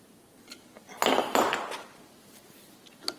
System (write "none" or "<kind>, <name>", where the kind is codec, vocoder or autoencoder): none